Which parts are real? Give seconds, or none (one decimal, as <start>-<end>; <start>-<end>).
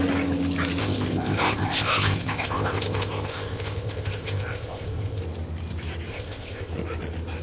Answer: 0.0-0.8; 5.2-6.1; 6.7-7.4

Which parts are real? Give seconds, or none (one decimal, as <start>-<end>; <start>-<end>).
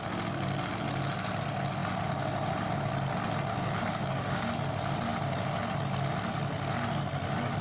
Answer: 0.0-3.5; 4.5-7.6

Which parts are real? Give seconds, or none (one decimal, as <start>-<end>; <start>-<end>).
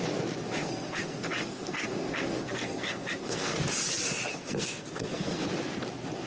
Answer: 0.0-0.6; 3.6-4.3; 5.4-6.3